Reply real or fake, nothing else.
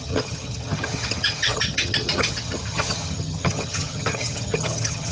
fake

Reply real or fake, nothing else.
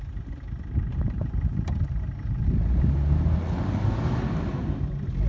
real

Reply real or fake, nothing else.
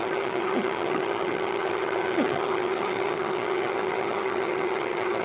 fake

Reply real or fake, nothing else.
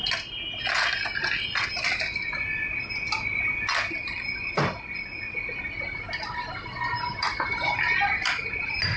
real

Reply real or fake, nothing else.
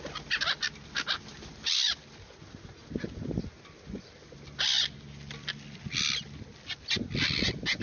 real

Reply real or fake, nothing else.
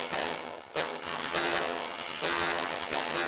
fake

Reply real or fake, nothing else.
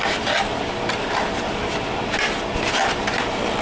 real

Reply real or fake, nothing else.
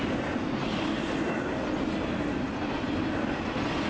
real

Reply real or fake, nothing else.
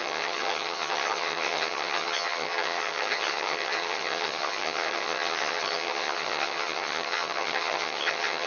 fake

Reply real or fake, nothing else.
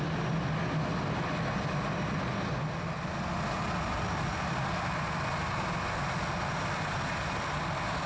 real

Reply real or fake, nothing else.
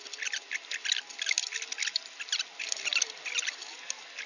real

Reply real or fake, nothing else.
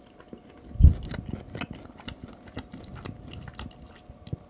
real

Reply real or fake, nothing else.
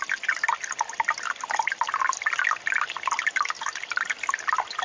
real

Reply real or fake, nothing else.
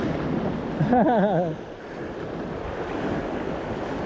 real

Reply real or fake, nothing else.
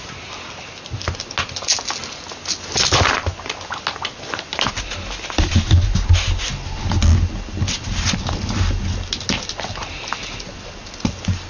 real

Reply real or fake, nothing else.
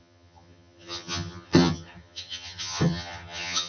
fake